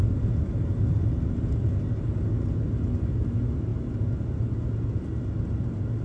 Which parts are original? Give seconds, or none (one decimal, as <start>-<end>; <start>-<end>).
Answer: 0.0-6.0